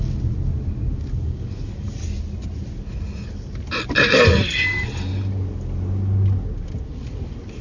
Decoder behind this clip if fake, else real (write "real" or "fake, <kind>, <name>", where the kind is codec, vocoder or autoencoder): real